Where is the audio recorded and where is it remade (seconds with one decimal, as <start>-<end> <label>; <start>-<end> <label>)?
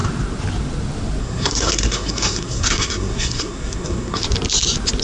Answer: 0.0-1.2 recorded; 1.2-4.2 remade; 4.2-5.0 recorded